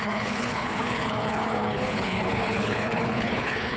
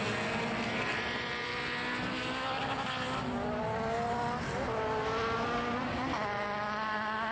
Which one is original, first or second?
second